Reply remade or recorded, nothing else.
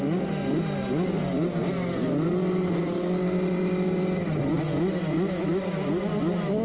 recorded